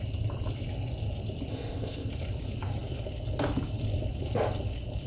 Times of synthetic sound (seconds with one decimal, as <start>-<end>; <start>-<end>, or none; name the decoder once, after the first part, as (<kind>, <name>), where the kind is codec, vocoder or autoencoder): 1.5-2.1 (codec, ZipCodec)